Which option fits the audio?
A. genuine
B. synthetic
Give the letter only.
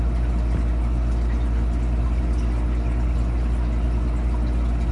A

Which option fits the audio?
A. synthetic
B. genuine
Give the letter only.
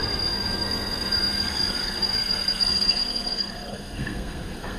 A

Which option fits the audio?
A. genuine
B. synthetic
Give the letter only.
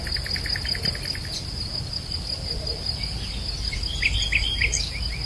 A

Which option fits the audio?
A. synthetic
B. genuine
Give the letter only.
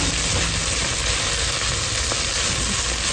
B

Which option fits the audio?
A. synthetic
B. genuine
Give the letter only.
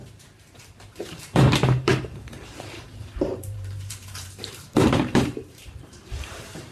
A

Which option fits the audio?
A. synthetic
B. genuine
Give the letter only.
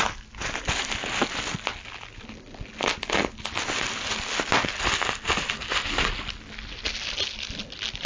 B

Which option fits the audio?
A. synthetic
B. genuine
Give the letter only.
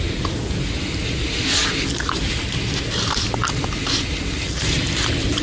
B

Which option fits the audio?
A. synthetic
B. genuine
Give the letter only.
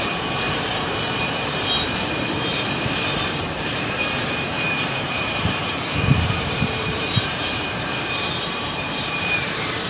A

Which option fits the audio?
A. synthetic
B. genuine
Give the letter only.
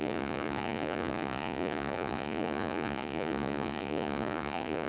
A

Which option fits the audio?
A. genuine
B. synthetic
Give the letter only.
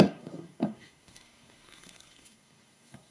B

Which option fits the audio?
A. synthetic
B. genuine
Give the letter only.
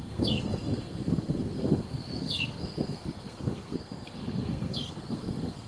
A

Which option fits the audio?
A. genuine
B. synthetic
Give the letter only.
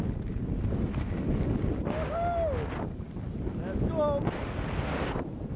A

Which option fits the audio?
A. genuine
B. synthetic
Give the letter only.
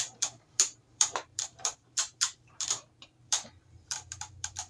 B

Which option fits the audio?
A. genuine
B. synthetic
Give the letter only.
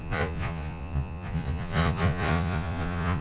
B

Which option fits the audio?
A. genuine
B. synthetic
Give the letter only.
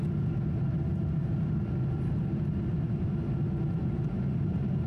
A